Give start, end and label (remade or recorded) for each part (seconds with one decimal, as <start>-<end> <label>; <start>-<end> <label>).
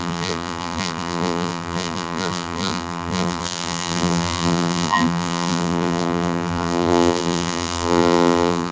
0.0-8.7 remade